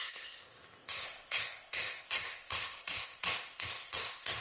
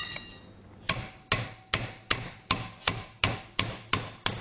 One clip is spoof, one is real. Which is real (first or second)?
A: second